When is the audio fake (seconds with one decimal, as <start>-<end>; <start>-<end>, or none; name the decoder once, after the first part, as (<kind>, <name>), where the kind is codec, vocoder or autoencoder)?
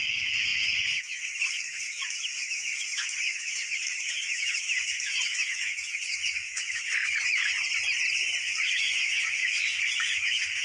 0.0-7.5 (autoencoder, DAC-VAE); 8.4-10.6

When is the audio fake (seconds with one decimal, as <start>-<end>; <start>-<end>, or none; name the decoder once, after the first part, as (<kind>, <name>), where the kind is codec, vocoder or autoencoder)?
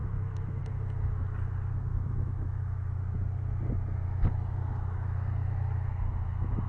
0.0-0.6 (autoencoder, DAC-VAE); 1.9-3.0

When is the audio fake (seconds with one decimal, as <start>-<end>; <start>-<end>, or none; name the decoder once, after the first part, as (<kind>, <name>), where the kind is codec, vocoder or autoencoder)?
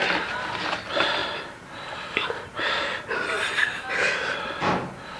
none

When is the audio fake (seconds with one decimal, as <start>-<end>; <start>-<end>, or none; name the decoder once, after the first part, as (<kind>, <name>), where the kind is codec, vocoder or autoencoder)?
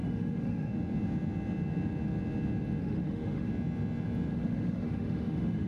0.0-0.7 (autoencoder, DAC-VAE); 2.8-3.5; 4.3-5.7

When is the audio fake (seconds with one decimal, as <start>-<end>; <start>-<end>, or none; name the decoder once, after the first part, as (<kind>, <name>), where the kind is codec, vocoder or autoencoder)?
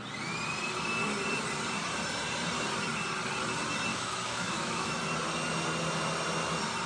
3.9-5.0 (autoencoder, DAC-VAE)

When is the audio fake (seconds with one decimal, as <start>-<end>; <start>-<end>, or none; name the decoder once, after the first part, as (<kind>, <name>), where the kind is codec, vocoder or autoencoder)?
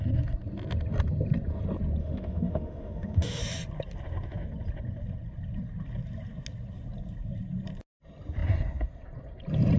2.0-3.4 (autoencoder, DAC-VAE)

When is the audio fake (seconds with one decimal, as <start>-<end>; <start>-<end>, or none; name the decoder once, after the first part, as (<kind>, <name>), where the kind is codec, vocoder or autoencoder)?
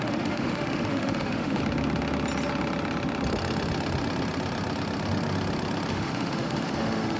0.0-1.6 (autoencoder, DAC-VAE); 5.9-7.2